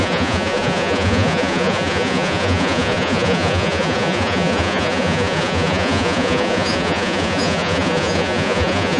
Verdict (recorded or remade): remade